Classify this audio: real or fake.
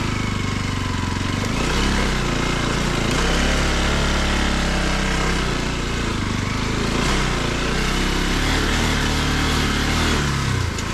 real